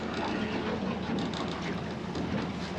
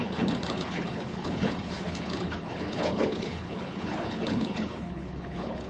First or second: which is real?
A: first